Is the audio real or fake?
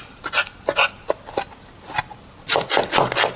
real